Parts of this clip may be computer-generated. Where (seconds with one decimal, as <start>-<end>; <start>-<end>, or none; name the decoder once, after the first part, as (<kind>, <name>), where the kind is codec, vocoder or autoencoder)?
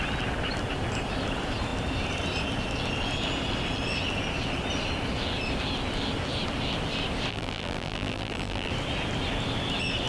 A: 7.3-8.7 (vocoder, BigVGAN v2)